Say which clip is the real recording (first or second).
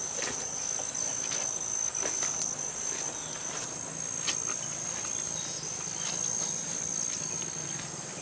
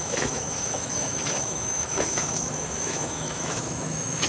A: first